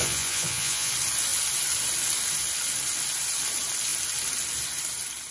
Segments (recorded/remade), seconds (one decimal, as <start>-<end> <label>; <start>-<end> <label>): 0.0-0.9 remade; 0.9-5.3 recorded